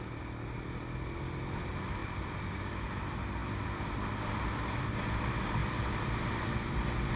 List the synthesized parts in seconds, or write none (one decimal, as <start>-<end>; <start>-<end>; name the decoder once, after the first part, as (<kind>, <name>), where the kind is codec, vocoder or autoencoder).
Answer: 2.0-2.8 (vocoder, BigVGAN v2); 3.4-4.8; 5.6-6.7